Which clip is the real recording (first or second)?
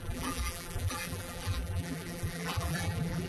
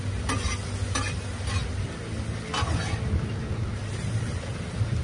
second